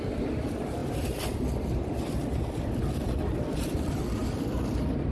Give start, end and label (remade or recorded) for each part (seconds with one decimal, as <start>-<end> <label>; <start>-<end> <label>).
0.0-5.1 recorded